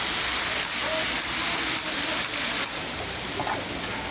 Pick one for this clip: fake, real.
real